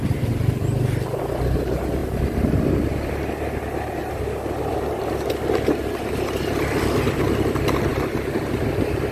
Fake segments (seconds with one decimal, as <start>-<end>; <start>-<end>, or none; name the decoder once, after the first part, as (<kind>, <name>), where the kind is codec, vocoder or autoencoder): 4.0-5.1 (vocoder, BigVGAN v2); 7.9-8.7